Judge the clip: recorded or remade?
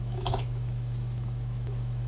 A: remade